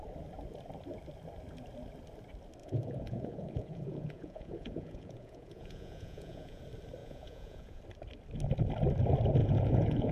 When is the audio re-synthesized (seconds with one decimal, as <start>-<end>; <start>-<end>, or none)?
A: 2.6-6.6; 7.0-7.8; 9.4-10.1